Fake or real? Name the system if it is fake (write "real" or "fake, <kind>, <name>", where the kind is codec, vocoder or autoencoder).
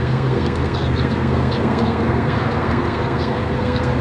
fake, codec, SNAC